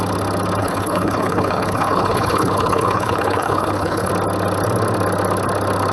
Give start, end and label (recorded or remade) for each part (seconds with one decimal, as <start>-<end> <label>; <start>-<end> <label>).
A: 0.0-0.6 recorded; 0.6-4.1 remade; 4.1-5.9 recorded